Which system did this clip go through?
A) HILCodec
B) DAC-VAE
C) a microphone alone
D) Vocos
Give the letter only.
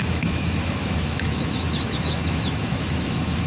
B